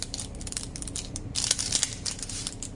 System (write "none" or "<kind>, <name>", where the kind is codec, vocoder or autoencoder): vocoder, BigVGAN v2